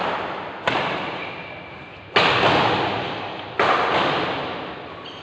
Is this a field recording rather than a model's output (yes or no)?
yes